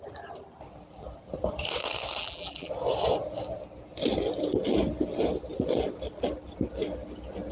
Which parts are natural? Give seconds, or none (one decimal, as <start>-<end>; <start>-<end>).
0.0-2.2; 2.7-7.5